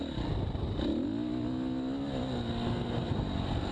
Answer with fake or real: real